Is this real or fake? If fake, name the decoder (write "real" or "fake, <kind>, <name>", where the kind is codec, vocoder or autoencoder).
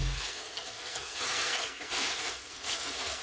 fake, codec, SNAC